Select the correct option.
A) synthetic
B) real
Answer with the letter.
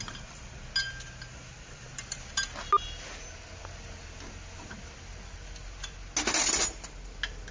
B